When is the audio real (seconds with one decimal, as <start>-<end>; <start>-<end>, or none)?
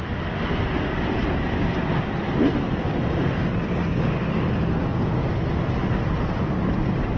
0.0-2.5; 3.6-7.2